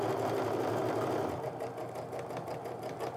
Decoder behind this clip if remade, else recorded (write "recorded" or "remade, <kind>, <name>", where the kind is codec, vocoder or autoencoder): recorded